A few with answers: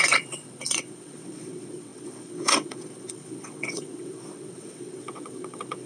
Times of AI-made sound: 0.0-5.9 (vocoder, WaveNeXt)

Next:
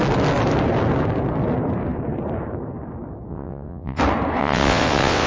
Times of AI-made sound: 3.3-4.0 (vocoder, WaveNeXt); 4.4-5.3

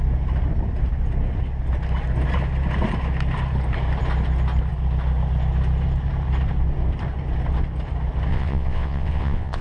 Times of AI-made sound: 8.3-9.6 (vocoder, WaveNeXt)

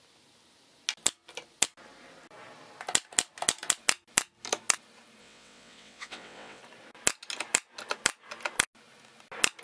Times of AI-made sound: 5.2-6.6 (vocoder, WaveNeXt)

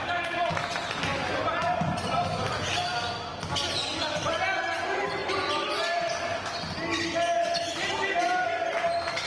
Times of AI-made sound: none

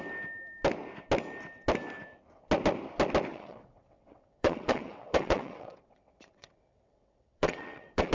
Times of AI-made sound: 3.3-8.1 (vocoder, WaveNeXt)

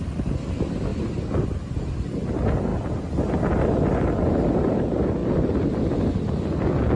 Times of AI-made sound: none

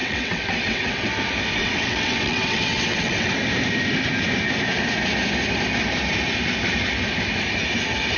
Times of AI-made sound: 0.0-1.1 (vocoder, WaveNeXt); 1.6-3.3